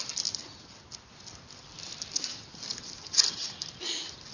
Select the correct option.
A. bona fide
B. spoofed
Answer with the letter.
A